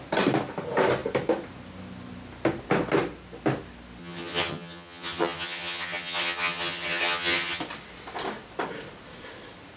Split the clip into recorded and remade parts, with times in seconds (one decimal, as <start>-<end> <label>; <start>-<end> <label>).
0.0-4.0 recorded; 4.0-7.6 remade; 7.6-9.8 recorded

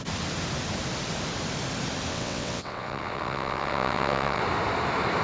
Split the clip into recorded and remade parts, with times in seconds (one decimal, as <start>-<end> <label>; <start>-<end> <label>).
0.0-2.1 recorded; 2.1-4.4 remade; 4.4-5.2 recorded

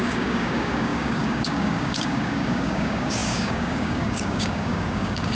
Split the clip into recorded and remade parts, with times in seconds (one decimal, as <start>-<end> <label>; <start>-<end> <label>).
0.0-5.3 remade

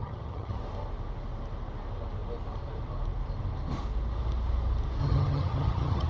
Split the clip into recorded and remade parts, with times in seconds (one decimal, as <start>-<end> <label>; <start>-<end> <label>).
0.0-0.6 remade; 0.6-5.0 recorded; 5.0-6.1 remade

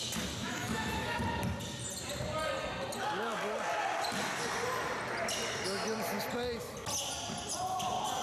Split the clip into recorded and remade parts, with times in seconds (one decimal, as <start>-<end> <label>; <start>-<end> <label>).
0.0-0.4 recorded; 0.4-1.2 remade; 1.2-8.2 recorded

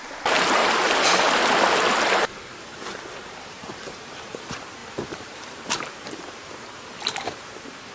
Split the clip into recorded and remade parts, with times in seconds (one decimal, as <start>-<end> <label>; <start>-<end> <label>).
0.0-0.6 remade; 0.6-3.4 recorded; 3.4-7.9 remade